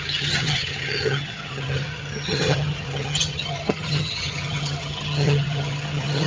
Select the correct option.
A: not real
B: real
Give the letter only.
A